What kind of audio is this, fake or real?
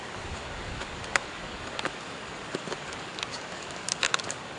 fake